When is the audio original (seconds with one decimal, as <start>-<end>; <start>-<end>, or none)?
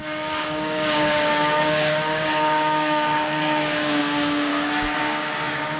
4.5-5.0